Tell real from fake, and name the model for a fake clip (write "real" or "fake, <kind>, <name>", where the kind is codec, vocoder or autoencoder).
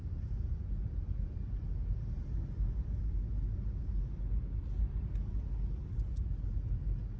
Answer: real